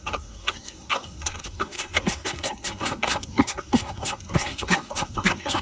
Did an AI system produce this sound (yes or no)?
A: yes